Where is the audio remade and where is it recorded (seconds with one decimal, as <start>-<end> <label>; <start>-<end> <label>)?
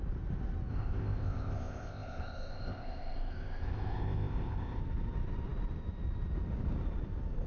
0.0-0.7 recorded; 0.7-4.8 remade; 4.8-7.5 recorded